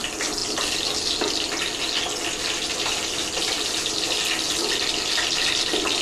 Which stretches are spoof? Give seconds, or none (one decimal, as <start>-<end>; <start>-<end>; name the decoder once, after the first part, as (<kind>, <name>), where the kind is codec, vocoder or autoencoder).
none